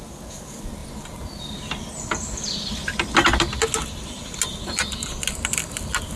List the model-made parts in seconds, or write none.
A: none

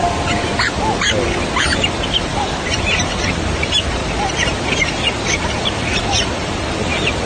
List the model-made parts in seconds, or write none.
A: 1.6-4.0 (vocoder, BigVGAN v2); 6.2-7.3

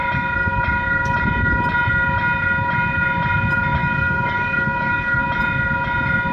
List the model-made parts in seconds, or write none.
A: 3.8-5.2 (codec, DAC)

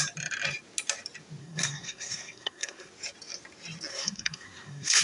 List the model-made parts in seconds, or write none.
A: 1.4-2.9 (codec, SNAC); 3.9-5.0